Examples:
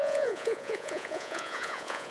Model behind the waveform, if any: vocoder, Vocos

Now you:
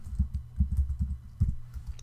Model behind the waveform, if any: none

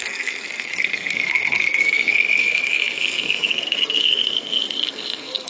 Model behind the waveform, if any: codec, SNAC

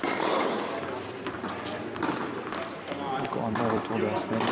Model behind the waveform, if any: vocoder, BigVGAN v2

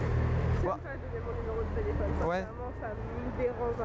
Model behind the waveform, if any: none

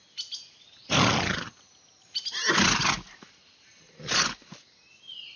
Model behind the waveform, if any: none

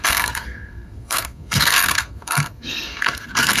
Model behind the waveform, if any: codec, SNAC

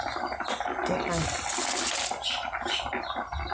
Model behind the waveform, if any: none